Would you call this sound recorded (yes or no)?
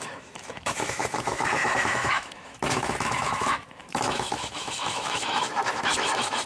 no